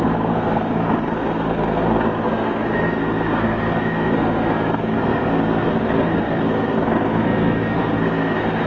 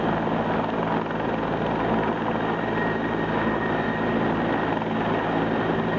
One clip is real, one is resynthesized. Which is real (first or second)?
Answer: second